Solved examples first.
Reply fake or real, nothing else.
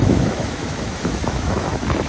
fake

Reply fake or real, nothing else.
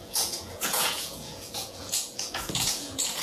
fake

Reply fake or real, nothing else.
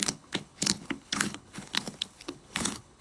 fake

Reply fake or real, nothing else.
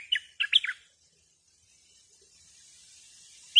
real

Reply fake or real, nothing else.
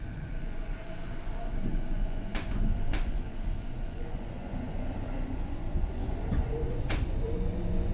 fake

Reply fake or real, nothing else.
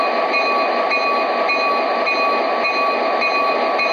real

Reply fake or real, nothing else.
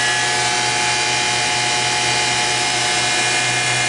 real